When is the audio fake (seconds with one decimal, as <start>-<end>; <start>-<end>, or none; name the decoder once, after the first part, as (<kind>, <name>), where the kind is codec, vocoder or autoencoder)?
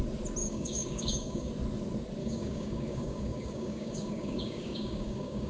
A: 0.4-1.5 (codec, DAC); 2.2-5.5